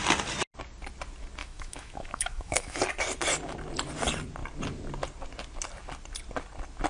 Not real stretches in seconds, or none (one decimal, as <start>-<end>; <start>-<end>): 1.4-2.8